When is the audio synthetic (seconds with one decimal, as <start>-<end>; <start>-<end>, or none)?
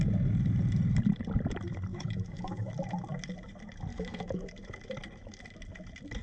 1.9-2.7; 3.9-4.5